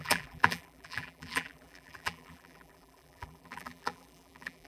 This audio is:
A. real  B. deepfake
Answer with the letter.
B